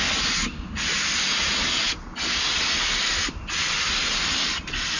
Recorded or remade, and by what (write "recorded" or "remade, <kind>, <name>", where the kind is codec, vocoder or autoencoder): recorded